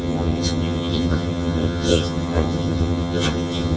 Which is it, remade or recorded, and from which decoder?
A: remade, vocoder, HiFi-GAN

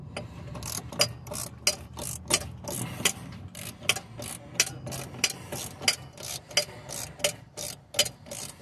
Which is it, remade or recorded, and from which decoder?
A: recorded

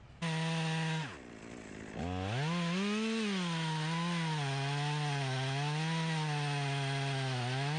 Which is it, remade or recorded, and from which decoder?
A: recorded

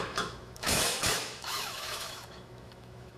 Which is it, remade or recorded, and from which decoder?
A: remade, autoencoder, DAC-VAE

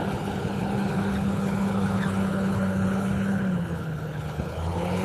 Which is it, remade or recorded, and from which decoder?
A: remade, codec, HILCodec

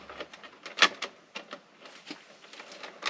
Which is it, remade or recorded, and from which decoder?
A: recorded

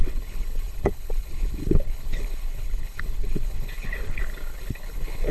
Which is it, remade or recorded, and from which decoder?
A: remade, codec, HILCodec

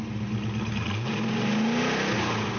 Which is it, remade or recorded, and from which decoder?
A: recorded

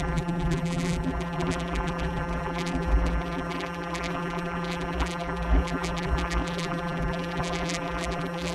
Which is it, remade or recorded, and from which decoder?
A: remade, vocoder, BigVGAN v2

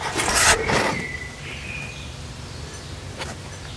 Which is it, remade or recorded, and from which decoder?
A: recorded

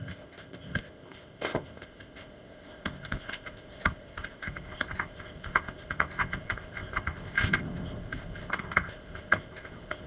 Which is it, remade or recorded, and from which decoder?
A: remade, codec, ZipCodec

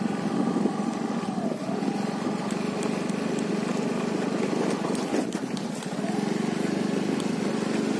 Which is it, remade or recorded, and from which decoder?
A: recorded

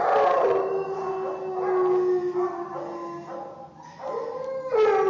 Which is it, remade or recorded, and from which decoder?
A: recorded